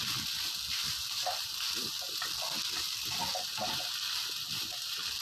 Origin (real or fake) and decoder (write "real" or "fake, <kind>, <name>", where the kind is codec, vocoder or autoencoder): real